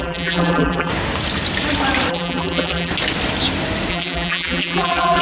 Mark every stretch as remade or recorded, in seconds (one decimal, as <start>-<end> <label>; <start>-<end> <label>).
0.0-0.9 remade; 0.9-2.1 recorded; 2.1-2.9 remade; 2.9-3.9 recorded; 3.9-5.2 remade